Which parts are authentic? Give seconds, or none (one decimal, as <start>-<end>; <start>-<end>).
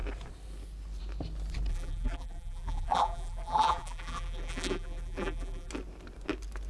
0.0-1.7; 5.7-6.7